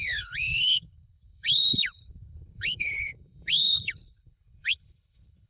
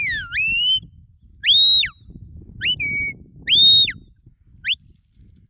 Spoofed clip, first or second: first